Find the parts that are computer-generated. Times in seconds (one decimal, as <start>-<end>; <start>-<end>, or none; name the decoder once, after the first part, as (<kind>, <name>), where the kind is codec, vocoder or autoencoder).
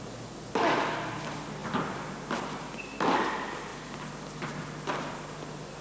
none